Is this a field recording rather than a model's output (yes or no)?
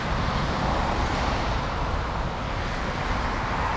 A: yes